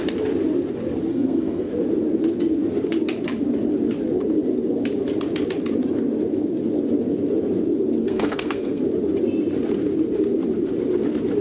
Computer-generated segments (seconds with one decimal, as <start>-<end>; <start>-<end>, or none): 1.1-1.7; 8.0-8.8